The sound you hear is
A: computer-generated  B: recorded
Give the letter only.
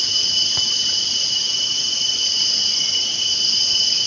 A